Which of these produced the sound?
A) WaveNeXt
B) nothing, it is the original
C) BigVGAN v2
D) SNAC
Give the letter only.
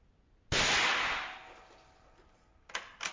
B